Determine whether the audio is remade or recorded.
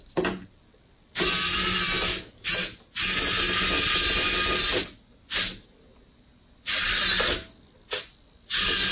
recorded